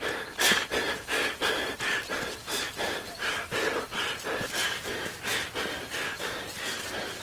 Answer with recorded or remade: recorded